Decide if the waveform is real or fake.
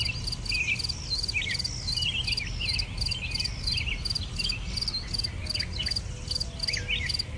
real